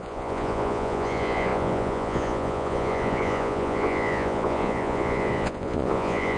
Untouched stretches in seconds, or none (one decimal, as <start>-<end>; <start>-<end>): none